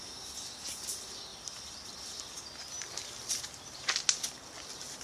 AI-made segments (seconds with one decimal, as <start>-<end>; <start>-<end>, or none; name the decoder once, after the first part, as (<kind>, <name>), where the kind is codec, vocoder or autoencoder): 1.3-2.4 (vocoder, BigVGAN v2); 3.2-3.9